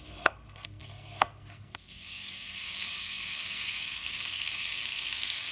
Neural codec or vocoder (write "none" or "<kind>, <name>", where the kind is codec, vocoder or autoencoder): codec, SNAC